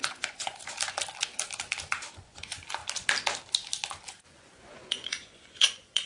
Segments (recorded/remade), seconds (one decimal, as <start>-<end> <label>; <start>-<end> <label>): 0.0-0.6 remade; 0.6-2.1 recorded; 2.1-2.8 remade; 2.8-4.1 recorded; 4.1-6.1 remade

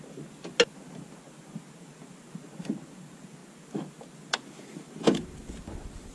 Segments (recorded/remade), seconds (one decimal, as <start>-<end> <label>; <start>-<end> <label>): 0.0-6.1 recorded

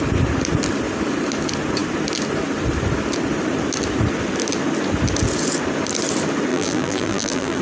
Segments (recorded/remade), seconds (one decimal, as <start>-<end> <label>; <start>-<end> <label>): 0.0-6.5 recorded; 6.5-7.6 remade

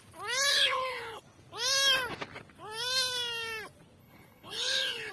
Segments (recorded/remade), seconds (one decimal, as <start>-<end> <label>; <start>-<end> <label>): 0.0-0.5 recorded; 0.5-1.2 remade; 1.2-4.0 recorded; 4.0-5.1 remade

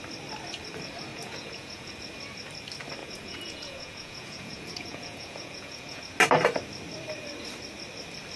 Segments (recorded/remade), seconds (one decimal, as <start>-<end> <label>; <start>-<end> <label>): 0.0-1.1 recorded; 1.1-1.9 remade; 1.9-3.0 recorded; 3.0-6.0 remade; 6.0-8.4 recorded

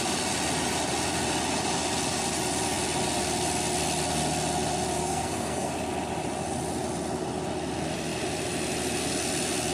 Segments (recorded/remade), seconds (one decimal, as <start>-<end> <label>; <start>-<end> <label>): 0.0-5.0 recorded; 5.0-5.7 remade; 5.7-9.7 recorded

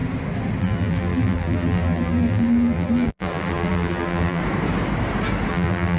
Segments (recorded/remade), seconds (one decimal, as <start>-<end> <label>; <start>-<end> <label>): 0.0-0.6 recorded; 0.6-4.4 remade; 4.4-5.5 recorded; 5.5-6.0 remade

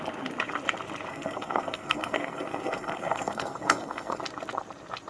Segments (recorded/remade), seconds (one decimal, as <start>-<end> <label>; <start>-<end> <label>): 0.0-1.1 recorded; 1.1-4.2 remade; 4.2-5.1 recorded